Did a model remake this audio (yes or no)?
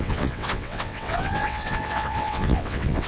yes